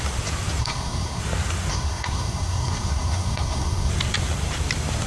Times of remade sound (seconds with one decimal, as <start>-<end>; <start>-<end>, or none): 0.6-1.2; 1.7-3.9